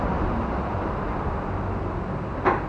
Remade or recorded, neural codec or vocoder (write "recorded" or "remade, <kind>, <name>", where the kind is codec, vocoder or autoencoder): recorded